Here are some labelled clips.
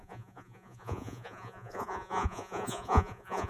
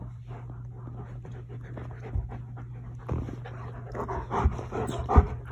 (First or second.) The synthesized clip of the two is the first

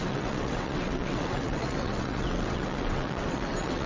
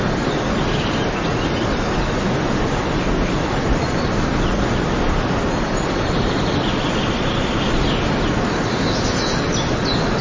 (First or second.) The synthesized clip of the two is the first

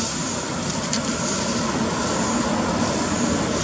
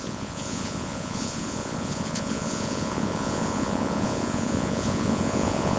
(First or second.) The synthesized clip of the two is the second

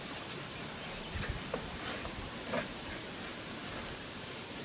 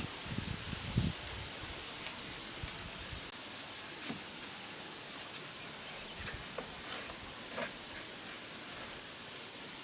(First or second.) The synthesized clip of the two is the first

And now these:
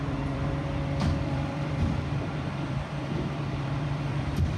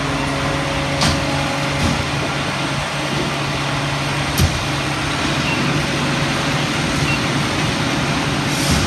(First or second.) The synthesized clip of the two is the first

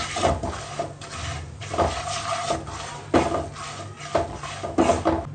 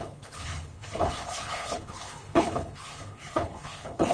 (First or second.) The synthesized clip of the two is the second